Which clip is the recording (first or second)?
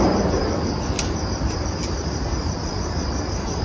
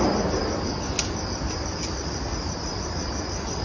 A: second